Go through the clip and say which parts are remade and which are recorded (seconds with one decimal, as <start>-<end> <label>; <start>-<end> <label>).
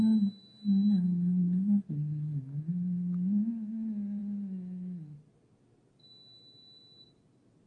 0.0-7.7 recorded